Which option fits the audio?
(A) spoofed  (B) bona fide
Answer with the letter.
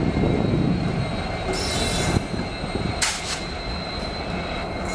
B